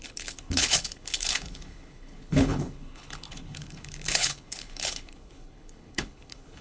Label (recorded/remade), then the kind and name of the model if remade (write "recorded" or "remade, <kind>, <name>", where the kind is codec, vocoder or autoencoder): remade, codec, HILCodec